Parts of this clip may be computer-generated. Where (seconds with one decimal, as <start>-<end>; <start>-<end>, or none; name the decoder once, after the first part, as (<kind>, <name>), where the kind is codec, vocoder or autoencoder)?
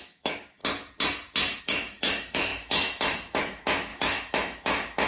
0.0-0.6 (autoencoder, DAC-VAE); 1.6-5.1